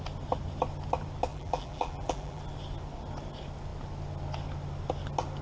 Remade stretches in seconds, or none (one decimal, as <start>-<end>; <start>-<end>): 1.3-2.4